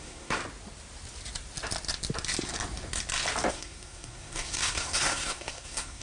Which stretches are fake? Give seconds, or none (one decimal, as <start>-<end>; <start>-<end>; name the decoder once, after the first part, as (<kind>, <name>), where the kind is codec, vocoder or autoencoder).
0.0-0.4 (codec, SNAC); 3.5-6.0